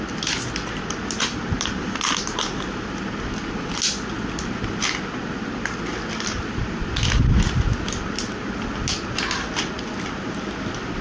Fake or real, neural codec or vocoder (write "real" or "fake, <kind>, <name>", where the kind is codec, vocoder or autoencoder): real